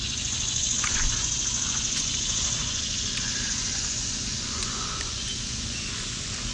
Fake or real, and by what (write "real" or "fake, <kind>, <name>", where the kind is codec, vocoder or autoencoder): fake, vocoder, Vocos